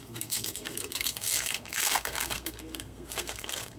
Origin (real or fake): fake